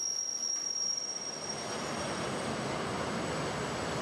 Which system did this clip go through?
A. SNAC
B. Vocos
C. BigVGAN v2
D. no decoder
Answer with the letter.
D